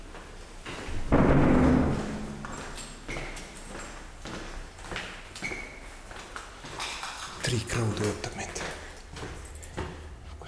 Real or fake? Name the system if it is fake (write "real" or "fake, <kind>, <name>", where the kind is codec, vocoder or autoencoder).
real